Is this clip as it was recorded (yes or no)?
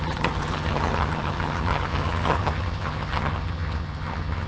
no